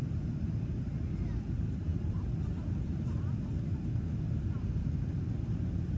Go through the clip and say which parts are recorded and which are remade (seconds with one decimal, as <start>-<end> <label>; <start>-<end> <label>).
0.0-6.0 remade